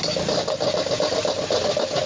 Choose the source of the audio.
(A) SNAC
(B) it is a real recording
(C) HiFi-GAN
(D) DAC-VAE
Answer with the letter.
B